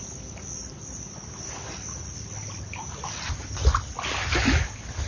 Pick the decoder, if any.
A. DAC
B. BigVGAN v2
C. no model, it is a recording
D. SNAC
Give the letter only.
C